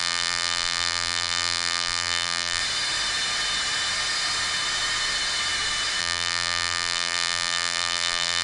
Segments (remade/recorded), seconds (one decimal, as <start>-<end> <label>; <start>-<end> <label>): 0.0-2.6 remade; 2.6-6.0 recorded; 6.0-8.4 remade